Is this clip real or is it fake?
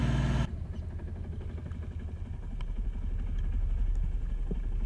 real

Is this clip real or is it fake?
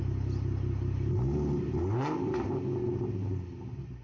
real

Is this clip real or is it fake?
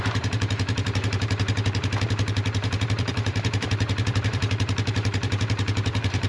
fake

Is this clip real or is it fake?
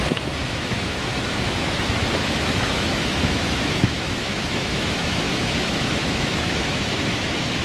fake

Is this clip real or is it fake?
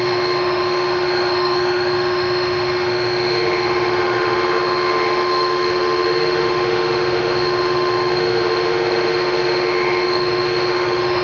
fake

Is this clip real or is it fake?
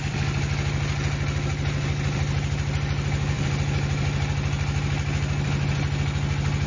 real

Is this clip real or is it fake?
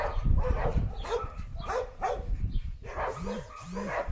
fake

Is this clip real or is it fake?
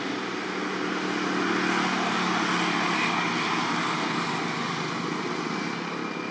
real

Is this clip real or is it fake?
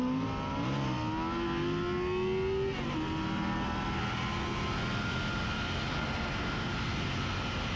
real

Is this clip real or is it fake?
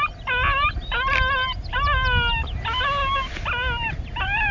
real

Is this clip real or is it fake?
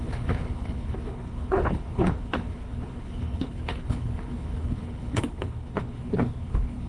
fake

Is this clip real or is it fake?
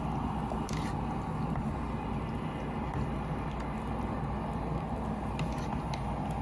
real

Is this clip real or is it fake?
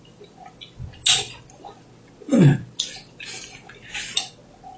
real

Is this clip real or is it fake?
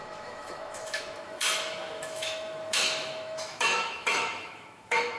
fake